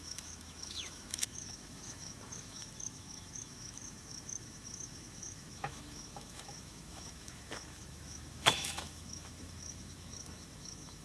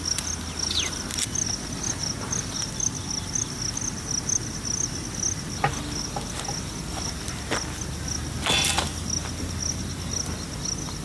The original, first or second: second